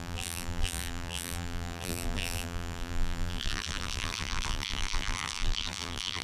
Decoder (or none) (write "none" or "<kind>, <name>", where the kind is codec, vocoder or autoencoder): vocoder, BigVGAN v2